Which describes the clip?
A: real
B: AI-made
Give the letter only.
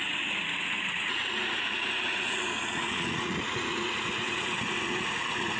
B